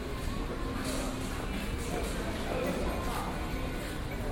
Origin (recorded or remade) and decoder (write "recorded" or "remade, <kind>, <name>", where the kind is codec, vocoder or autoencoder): recorded